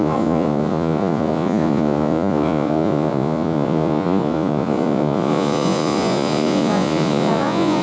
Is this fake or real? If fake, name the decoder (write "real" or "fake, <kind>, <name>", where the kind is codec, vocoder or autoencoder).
fake, vocoder, Vocos